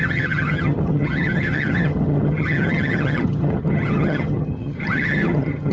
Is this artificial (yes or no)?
yes